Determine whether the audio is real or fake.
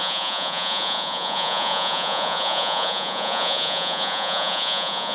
fake